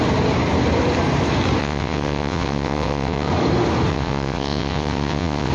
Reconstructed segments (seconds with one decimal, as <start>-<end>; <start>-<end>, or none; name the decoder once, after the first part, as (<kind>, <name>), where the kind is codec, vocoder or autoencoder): 1.6-3.3 (vocoder, WaveNeXt); 3.9-5.5